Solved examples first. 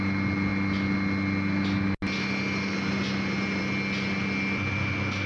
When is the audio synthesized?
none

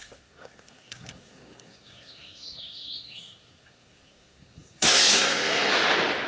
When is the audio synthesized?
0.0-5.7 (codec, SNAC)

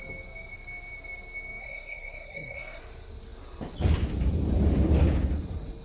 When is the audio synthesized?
1.6-2.8 (codec, SNAC)